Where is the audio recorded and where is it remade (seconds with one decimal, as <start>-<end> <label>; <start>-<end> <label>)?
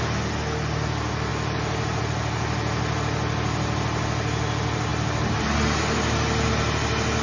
0.0-7.2 recorded